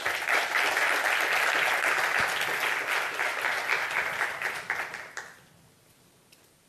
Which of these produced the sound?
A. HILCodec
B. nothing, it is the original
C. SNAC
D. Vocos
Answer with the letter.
B